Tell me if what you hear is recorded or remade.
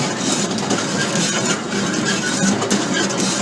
recorded